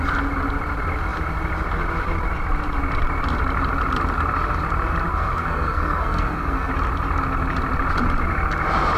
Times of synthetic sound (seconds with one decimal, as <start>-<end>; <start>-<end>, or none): 5.1-6.7